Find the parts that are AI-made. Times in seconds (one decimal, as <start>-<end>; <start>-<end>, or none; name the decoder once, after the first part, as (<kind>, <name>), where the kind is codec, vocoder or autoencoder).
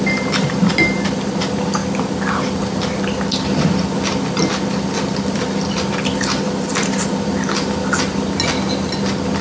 none